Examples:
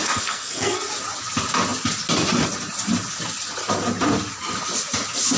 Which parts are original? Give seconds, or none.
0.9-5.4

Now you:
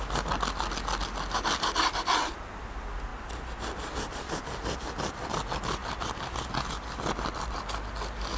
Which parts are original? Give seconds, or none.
0.0-8.4

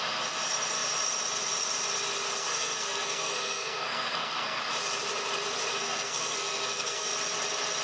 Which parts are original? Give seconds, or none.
0.0-2.4; 4.6-5.7; 7.1-7.8

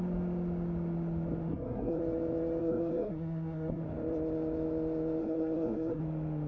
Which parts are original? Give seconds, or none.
0.0-1.5; 2.0-2.6; 3.8-5.2; 6.0-6.5

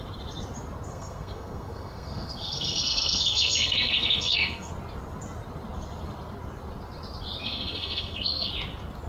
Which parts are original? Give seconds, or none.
0.0-0.9; 4.7-7.4; 8.5-9.1

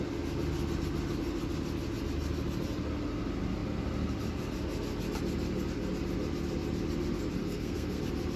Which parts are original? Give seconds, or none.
0.0-7.4; 8.0-8.4

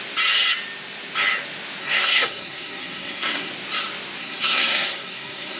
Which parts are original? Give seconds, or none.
0.0-1.8; 3.5-4.2